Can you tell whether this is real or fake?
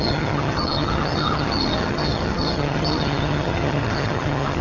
fake